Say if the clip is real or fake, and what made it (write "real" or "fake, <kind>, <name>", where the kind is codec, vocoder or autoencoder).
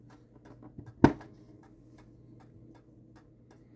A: real